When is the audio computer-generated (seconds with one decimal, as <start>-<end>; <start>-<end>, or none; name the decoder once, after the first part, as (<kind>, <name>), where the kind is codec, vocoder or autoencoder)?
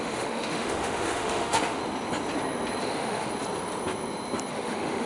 0.0-1.8 (autoencoder, DAC-VAE); 2.8-3.3; 4.5-5.1